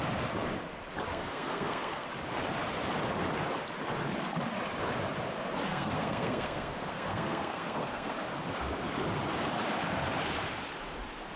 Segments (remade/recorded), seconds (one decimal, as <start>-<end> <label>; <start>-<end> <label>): 0.0-1.1 recorded; 1.1-2.1 remade; 2.1-5.7 recorded; 5.7-8.1 remade; 8.1-11.4 recorded